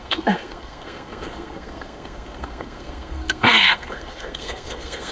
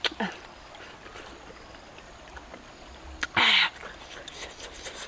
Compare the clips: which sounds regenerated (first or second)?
first